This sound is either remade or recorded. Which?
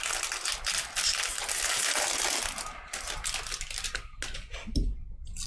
recorded